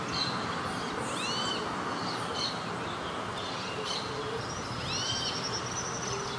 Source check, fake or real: real